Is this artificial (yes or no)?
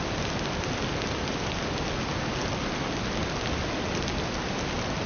no